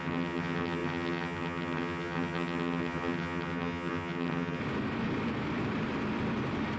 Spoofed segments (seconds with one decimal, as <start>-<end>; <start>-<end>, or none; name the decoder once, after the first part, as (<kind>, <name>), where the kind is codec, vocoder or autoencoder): 0.0-4.6 (vocoder, HiFi-GAN)